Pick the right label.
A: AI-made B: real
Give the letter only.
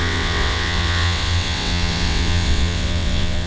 A